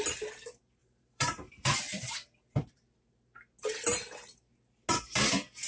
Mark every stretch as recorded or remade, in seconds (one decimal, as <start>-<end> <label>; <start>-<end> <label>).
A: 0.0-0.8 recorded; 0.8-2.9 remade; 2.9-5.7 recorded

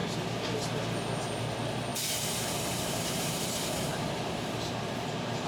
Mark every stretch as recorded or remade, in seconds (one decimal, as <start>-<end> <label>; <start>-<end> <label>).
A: 0.0-1.4 recorded; 1.4-1.9 remade; 1.9-2.7 recorded; 2.7-5.5 remade

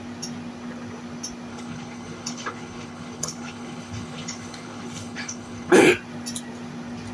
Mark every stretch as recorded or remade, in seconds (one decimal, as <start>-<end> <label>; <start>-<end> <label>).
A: 0.0-1.5 recorded; 1.5-5.8 remade; 5.8-7.1 recorded

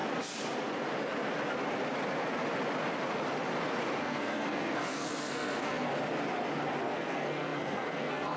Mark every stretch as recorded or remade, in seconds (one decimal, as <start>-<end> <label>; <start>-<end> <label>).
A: 0.0-4.0 recorded; 4.0-5.9 remade; 5.9-6.8 recorded; 6.8-8.4 remade

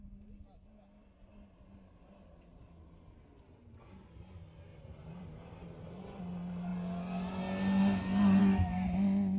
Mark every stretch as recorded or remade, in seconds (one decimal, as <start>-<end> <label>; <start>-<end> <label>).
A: 0.0-4.7 recorded; 4.7-6.2 remade; 6.2-9.4 recorded

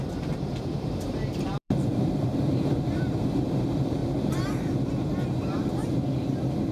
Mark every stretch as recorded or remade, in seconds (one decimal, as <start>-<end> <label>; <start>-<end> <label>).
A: 0.0-4.0 remade; 4.0-4.9 recorded; 4.9-5.8 remade; 5.8-6.7 recorded